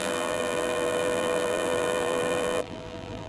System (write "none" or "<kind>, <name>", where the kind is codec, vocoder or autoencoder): vocoder, BigVGAN v2